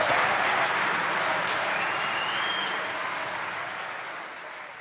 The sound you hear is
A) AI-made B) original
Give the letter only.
B